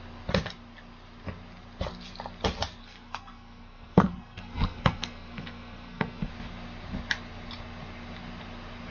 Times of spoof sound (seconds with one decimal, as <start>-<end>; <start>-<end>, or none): 2.8-6.3